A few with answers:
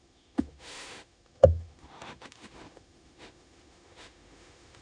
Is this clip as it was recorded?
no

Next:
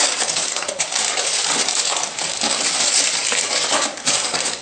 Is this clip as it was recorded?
no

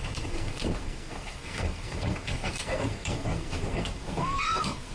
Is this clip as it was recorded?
no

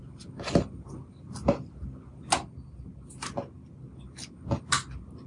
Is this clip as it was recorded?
yes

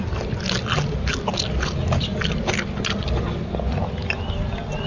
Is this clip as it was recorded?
yes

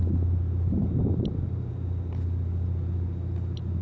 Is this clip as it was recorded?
yes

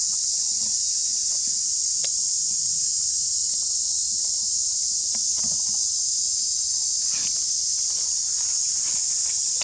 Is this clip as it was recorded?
yes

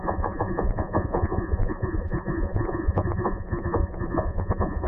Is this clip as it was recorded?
no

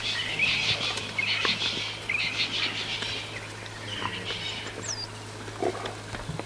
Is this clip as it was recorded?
yes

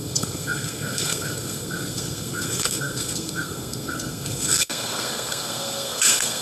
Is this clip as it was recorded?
no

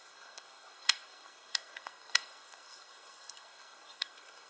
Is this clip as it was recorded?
no